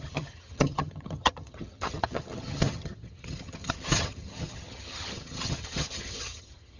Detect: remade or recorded remade